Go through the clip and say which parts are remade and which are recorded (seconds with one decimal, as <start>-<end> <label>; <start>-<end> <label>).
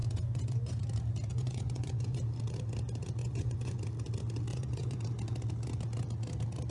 0.0-0.8 remade; 0.8-1.3 recorded; 1.3-2.2 remade; 2.2-3.2 recorded; 3.2-3.8 remade; 3.8-4.5 recorded; 4.5-5.0 remade; 5.0-6.7 recorded